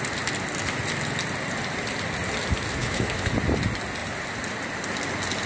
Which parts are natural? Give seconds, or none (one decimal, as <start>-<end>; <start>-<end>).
0.0-2.8; 3.3-5.5